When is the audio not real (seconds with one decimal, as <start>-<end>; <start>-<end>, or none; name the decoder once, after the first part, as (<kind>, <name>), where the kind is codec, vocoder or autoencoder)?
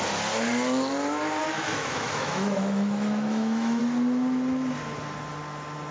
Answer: 1.4-3.8 (autoencoder, DAC-VAE)